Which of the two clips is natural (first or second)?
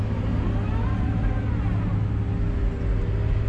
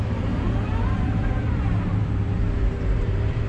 first